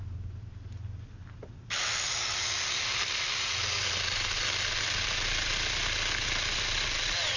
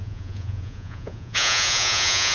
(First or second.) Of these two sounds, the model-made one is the second